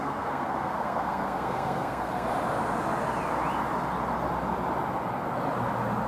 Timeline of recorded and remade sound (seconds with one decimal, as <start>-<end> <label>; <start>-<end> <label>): 0.0-2.3 remade; 2.3-6.1 recorded